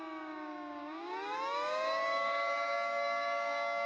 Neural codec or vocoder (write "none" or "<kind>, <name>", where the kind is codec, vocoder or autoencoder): codec, DAC